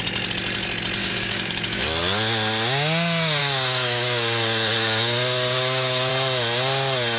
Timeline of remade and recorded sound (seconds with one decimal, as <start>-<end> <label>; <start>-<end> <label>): 0.0-1.0 recorded; 1.0-1.8 remade; 1.8-3.4 recorded; 3.4-6.1 remade; 6.1-7.2 recorded